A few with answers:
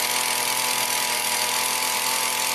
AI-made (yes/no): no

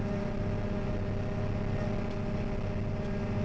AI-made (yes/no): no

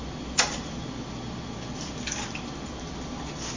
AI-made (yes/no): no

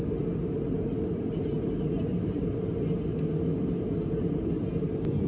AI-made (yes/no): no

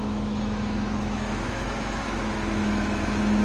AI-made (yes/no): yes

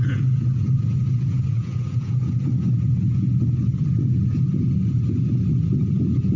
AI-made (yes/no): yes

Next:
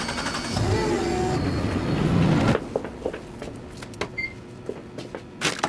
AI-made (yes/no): no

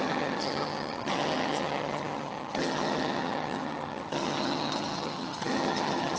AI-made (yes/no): yes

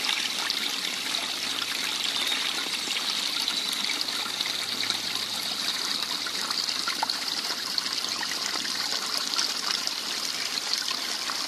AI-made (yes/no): yes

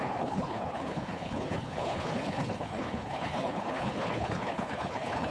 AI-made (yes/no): yes